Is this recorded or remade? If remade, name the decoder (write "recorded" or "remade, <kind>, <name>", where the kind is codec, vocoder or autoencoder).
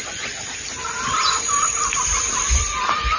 recorded